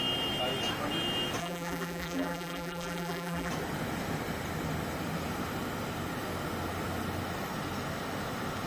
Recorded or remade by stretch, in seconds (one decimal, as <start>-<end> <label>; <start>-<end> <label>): 0.0-1.4 recorded; 1.4-3.5 remade; 3.5-8.7 recorded

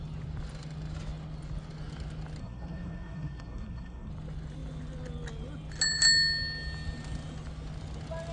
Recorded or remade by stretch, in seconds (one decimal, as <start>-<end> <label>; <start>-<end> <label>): 0.0-2.4 recorded; 2.4-4.1 remade; 4.1-8.3 recorded

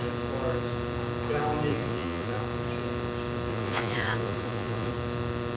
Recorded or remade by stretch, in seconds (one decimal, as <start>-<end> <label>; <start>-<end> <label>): 0.0-1.7 recorded; 1.7-2.4 remade; 2.4-3.5 recorded; 3.5-4.9 remade; 4.9-5.6 recorded